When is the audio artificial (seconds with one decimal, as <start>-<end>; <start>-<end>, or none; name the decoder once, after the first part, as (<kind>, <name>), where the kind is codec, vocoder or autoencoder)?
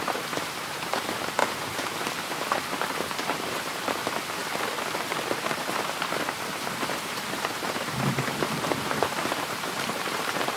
0.0-4.4 (vocoder, BigVGAN v2); 5.4-10.6